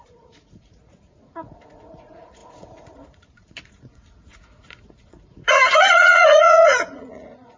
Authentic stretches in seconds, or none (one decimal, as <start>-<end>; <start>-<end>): none